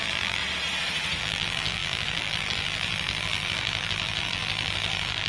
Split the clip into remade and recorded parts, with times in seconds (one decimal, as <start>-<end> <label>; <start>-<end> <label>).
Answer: 0.0-0.4 remade; 0.4-1.2 recorded; 1.2-5.3 remade